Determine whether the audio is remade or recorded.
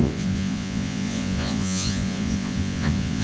remade